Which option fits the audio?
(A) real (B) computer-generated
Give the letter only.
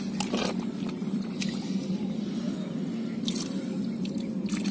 A